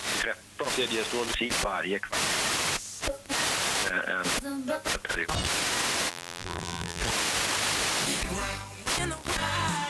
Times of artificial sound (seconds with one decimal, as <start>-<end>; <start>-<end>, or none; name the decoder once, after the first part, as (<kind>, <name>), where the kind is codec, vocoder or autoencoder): 6.1-7.0 (vocoder, BigVGAN v2)